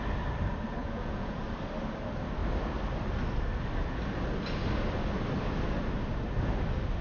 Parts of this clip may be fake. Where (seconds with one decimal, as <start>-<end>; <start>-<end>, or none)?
0.8-1.4